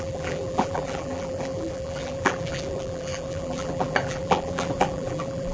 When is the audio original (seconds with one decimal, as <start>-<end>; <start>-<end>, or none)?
none